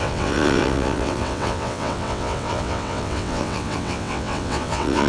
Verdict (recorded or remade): remade